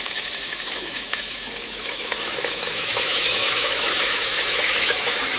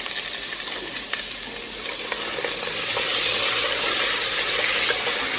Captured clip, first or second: second